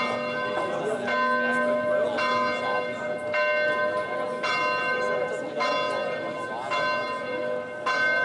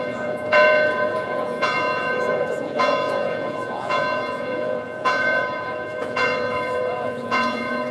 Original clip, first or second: first